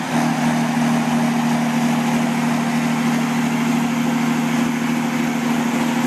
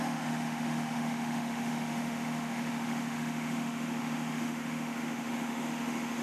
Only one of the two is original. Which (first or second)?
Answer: first